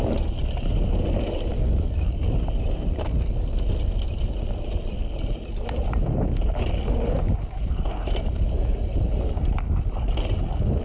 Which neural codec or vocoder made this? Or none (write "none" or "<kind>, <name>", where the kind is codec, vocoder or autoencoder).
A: none